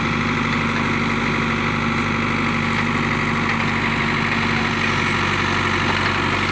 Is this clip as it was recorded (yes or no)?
yes